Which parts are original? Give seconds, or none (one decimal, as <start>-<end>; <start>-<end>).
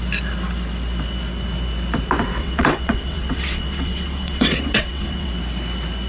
0.0-2.4; 5.3-6.1